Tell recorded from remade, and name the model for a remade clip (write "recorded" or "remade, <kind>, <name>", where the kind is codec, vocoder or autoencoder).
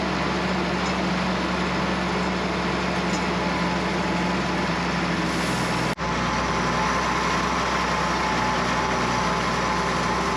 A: recorded